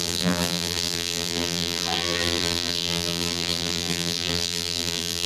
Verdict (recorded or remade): remade